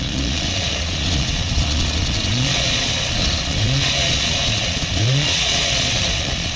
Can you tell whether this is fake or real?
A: fake